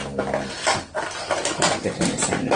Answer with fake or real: real